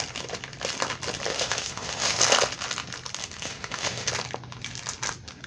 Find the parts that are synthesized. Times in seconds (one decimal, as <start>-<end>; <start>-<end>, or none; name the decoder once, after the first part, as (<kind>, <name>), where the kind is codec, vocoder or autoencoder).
1.3-2.2 (autoencoder, DAC-VAE); 3.2-4.1